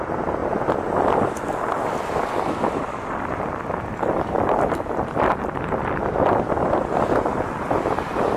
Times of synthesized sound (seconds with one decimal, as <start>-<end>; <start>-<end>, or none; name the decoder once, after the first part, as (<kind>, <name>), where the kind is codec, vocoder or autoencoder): 0.0-0.4 (vocoder, BigVGAN v2); 2.7-8.4